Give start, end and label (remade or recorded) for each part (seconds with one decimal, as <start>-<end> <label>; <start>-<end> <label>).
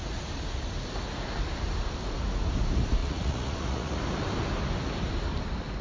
0.0-3.0 recorded; 3.0-4.0 remade; 4.0-5.8 recorded